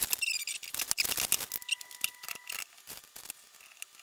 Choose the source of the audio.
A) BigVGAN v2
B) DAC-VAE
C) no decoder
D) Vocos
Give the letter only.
C